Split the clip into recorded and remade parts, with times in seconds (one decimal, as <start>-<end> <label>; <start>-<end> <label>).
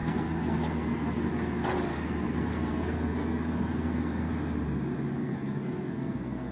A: 0.0-1.3 remade; 1.3-1.9 recorded; 1.9-4.3 remade; 4.3-5.2 recorded; 5.2-6.5 remade